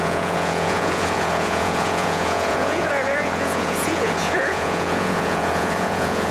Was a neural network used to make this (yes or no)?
yes